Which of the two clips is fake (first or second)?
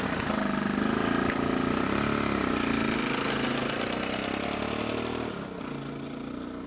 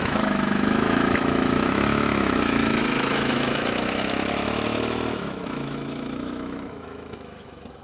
second